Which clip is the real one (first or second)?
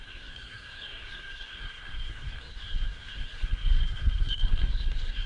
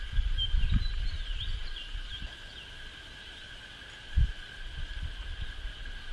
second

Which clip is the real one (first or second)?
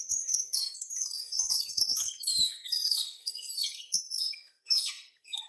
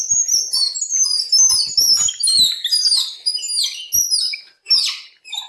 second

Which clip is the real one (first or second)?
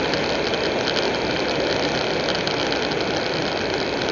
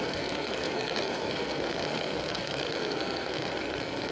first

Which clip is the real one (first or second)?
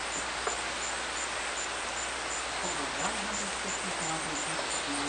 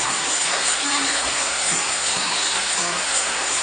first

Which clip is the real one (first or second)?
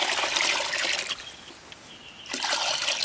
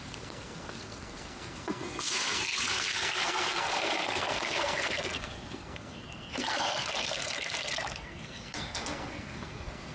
first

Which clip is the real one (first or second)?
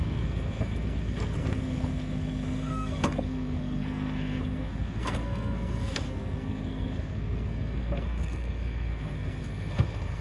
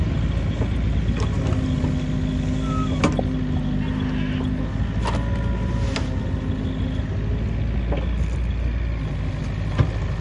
second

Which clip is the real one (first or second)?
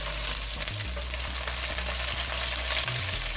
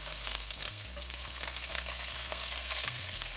first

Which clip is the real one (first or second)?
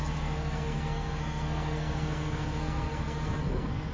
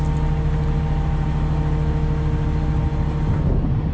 second